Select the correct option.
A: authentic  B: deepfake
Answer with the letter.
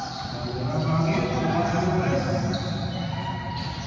A